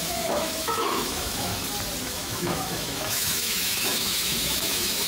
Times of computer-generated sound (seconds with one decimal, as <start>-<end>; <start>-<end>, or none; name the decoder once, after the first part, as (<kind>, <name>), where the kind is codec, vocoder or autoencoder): 0.0-1.5 (autoencoder, DAC-VAE); 2.0-5.1